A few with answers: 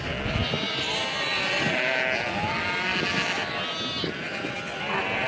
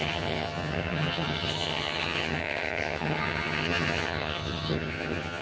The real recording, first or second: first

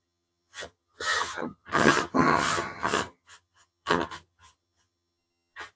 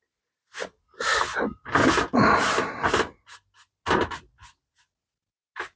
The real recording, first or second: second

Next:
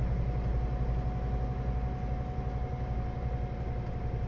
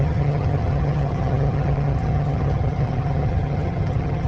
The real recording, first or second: first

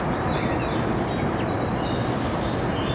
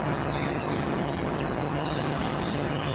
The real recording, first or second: first